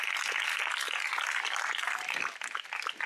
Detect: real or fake real